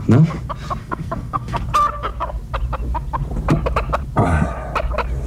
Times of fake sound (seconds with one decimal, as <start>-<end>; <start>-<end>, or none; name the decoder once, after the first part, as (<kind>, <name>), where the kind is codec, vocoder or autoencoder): 0.8-1.6 (codec, SNAC)